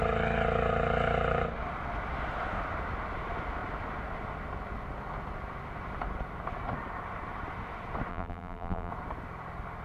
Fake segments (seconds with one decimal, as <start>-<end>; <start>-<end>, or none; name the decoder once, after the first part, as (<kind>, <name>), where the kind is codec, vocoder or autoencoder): 8.1-8.9 (vocoder, BigVGAN v2)